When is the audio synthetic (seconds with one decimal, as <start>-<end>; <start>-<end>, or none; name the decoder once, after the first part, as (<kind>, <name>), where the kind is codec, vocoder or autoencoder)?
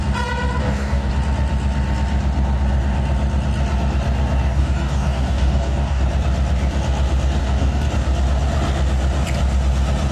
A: 0.6-1.1 (codec, DAC); 4.4-6.0; 7.4-7.9